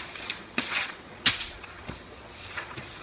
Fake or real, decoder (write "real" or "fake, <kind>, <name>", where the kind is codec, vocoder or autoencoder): fake, vocoder, Vocos